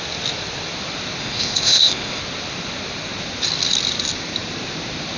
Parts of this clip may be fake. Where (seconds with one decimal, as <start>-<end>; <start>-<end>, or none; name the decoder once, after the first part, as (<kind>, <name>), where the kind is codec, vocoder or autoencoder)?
1.2-2.2 (codec, ZipCodec)